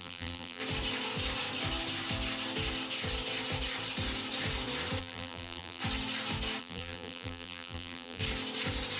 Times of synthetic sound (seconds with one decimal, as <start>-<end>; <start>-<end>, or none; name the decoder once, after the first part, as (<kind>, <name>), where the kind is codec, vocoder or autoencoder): 0.0-0.6 (vocoder, BigVGAN v2); 5.0-5.8; 6.6-8.2